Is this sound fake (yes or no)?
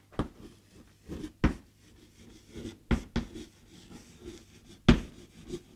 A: no